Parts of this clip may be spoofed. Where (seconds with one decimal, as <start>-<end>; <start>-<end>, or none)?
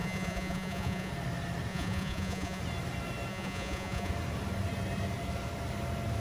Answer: 0.0-1.1; 1.7-2.6; 3.3-4.1